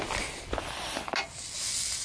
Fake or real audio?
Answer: real